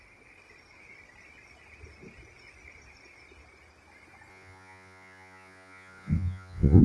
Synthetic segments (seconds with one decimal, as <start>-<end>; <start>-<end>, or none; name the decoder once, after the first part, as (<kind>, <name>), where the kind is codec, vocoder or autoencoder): 4.3-6.8 (vocoder, Vocos)